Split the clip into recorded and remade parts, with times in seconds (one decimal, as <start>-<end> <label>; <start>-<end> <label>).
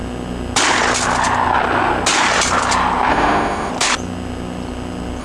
0.0-3.1 recorded; 3.1-3.7 remade; 3.7-5.2 recorded